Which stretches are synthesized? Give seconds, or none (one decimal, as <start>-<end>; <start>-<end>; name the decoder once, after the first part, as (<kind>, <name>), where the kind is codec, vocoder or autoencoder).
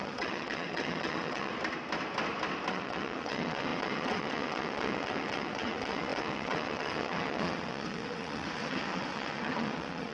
0.0-1.5 (vocoder, WaveNeXt); 2.7-10.1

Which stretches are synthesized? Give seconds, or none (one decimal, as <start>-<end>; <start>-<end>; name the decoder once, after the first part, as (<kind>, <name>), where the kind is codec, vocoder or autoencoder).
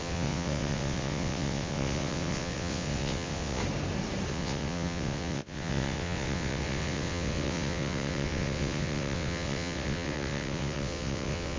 0.0-3.6 (vocoder, WaveNeXt); 4.3-11.6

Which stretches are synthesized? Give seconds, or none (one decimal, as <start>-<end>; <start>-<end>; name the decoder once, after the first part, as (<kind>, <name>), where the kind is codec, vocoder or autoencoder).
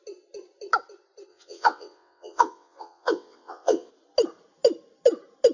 1.3-3.9 (vocoder, WaveNeXt)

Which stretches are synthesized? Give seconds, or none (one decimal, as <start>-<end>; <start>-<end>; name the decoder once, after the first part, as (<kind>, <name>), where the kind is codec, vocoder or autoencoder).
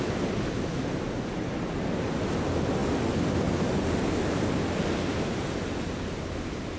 none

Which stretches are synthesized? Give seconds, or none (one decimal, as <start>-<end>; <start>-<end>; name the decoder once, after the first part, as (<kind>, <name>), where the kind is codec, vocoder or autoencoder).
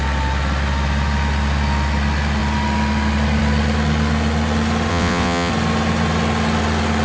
4.9-5.5 (vocoder, WaveNeXt)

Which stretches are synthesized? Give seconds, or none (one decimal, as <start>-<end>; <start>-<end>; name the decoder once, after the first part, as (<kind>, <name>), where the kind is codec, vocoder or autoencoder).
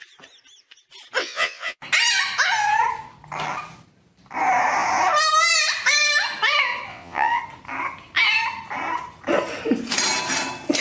1.2-1.8 (vocoder, WaveNeXt); 6.9-7.4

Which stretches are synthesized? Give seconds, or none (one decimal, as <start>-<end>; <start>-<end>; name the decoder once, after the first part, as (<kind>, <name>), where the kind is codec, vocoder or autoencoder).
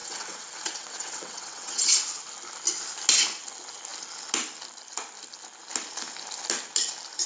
0.0-2.0 (vocoder, WaveNeXt)